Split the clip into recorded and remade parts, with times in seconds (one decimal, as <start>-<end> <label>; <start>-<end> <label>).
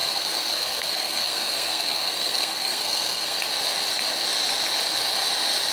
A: 0.0-3.4 remade; 3.4-5.7 recorded